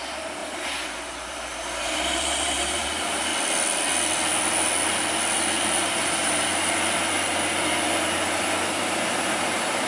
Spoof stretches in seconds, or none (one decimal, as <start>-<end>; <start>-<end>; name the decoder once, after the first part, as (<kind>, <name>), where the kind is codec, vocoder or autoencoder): 0.0-3.3 (vocoder, BigVGAN v2); 5.8-6.5; 8.4-9.9